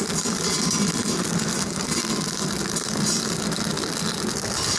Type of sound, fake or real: real